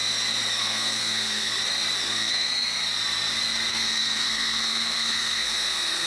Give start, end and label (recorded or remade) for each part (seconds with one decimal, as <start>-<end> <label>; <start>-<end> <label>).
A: 0.0-0.6 recorded; 0.6-1.5 remade; 1.5-2.1 recorded; 2.1-2.5 remade; 2.5-3.7 recorded; 3.7-6.1 remade